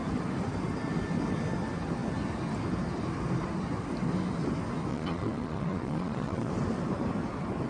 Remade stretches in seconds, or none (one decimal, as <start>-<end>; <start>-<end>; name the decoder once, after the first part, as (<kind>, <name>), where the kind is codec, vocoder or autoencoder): 4.9-6.5 (vocoder, Vocos)